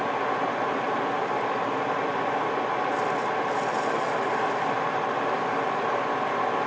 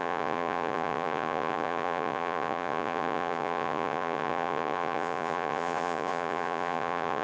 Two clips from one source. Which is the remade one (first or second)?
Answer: second